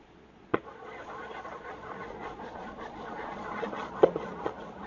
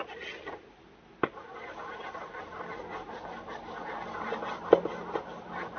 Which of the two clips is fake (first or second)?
first